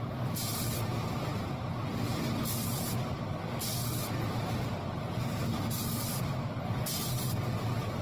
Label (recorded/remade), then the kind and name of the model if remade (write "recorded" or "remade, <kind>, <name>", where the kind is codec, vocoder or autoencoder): recorded